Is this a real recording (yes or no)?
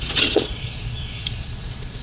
no